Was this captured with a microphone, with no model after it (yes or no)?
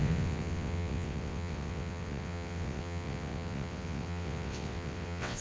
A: no